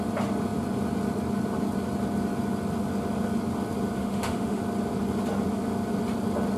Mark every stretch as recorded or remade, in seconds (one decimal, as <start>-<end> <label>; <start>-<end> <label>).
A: 0.0-4.0 recorded; 4.0-4.6 remade; 4.6-6.6 recorded